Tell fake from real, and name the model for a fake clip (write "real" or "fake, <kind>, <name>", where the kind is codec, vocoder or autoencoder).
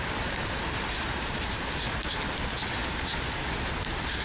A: real